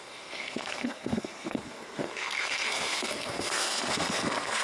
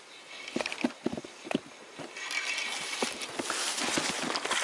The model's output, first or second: first